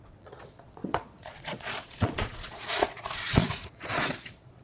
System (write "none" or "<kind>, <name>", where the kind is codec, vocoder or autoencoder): vocoder, Vocos